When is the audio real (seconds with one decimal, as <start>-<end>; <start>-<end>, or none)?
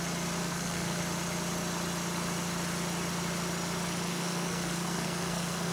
0.0-0.4; 1.0-4.1